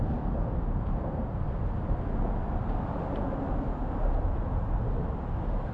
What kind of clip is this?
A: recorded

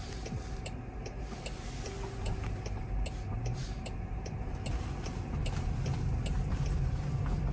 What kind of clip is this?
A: recorded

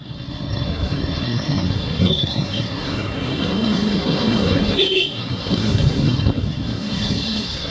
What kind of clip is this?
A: remade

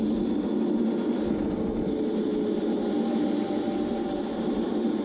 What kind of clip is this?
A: recorded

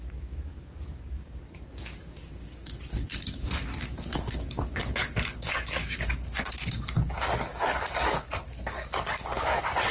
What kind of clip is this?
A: remade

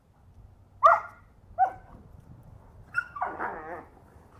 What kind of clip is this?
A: recorded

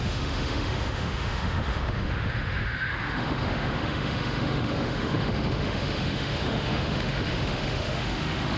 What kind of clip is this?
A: remade